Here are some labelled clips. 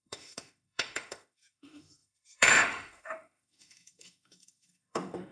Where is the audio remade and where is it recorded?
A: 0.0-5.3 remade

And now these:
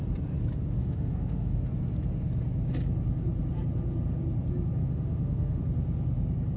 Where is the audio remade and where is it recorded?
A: 0.0-0.8 recorded; 0.8-1.6 remade; 1.6-4.8 recorded; 4.8-5.6 remade; 5.6-6.6 recorded

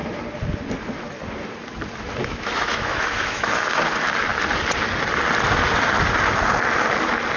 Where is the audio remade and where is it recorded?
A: 0.0-2.2 recorded; 2.2-3.5 remade; 3.5-7.4 recorded

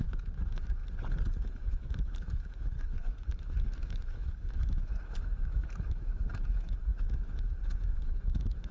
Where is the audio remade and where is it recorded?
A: 0.0-0.8 remade; 0.8-1.5 recorded; 1.5-8.7 remade

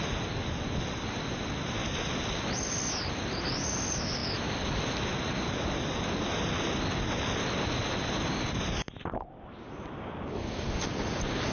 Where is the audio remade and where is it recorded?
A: 0.0-11.5 recorded

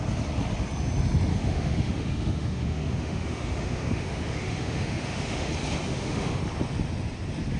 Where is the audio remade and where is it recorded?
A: 0.0-1.3 recorded; 1.3-5.5 remade; 5.5-5.9 recorded; 5.9-6.4 remade; 6.4-7.6 recorded

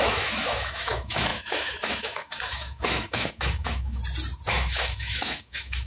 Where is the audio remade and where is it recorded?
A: 0.0-4.0 remade; 4.0-4.5 recorded; 4.5-5.9 remade

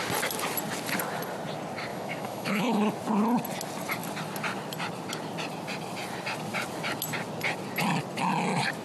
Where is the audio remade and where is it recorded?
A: 0.0-1.9 recorded; 1.9-2.8 remade; 2.8-8.8 recorded